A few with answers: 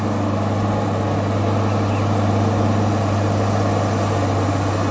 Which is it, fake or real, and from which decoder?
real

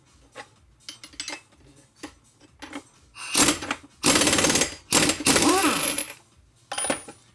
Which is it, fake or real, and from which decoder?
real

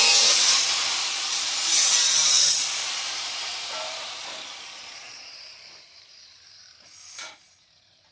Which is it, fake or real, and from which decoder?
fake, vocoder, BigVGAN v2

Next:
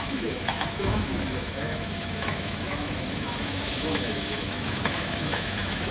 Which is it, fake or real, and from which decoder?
fake, autoencoder, DAC-VAE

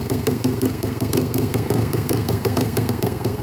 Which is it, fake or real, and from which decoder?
fake, codec, SNAC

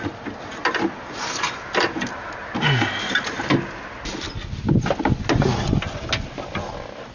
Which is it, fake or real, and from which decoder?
real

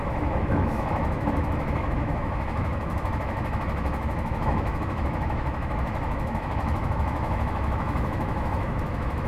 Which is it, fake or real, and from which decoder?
fake, autoencoder, DAC-VAE